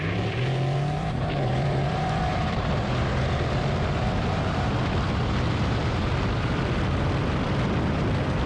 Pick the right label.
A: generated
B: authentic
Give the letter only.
A